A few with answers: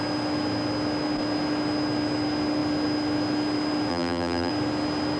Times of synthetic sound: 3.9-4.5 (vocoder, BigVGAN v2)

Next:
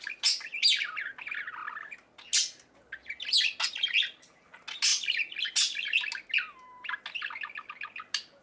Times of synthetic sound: none